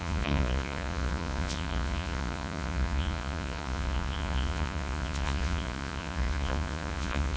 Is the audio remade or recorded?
remade